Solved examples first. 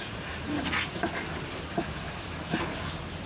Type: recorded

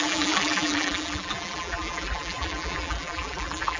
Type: remade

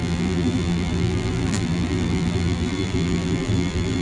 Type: remade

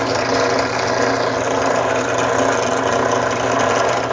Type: recorded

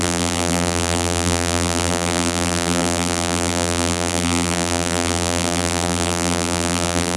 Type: remade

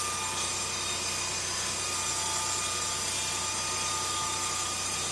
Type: recorded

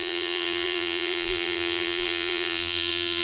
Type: remade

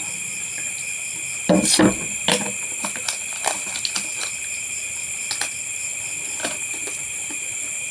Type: remade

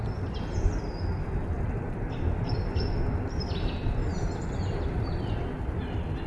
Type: recorded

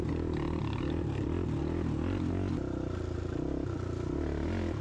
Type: recorded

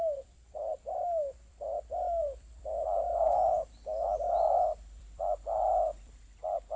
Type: remade